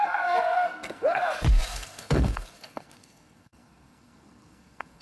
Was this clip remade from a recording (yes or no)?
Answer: yes